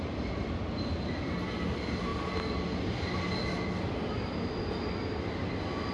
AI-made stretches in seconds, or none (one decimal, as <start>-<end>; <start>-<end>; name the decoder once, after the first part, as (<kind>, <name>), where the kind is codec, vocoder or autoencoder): none